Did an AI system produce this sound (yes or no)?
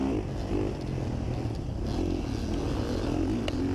no